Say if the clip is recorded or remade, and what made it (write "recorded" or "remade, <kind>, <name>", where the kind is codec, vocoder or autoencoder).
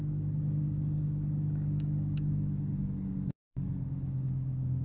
remade, codec, DAC